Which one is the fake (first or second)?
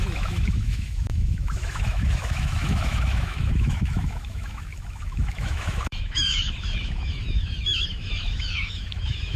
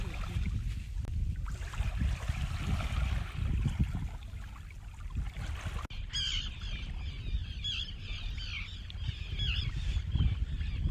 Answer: first